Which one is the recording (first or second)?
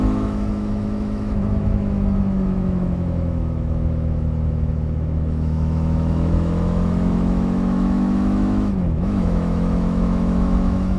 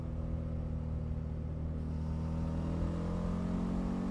second